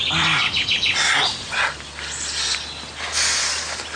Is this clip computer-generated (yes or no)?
no